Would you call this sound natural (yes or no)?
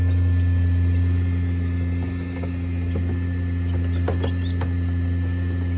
yes